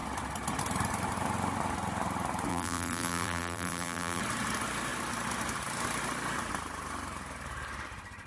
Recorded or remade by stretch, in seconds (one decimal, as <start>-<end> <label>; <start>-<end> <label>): 0.0-2.5 recorded; 2.5-4.2 remade; 4.2-8.3 recorded